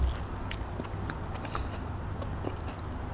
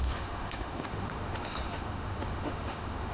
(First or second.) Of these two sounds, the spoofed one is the second